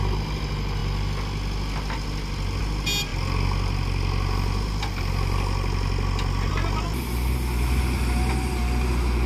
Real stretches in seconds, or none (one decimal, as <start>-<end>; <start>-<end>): 0.0-9.3